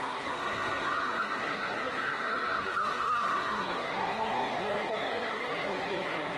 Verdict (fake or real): fake